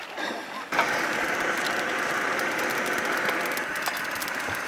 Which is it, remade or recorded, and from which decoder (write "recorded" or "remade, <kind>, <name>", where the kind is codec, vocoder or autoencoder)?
recorded